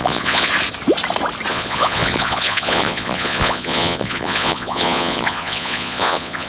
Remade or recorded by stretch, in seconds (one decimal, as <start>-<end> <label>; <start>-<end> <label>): 0.0-0.5 remade; 0.5-1.5 recorded; 1.5-6.5 remade